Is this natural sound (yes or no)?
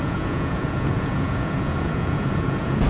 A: no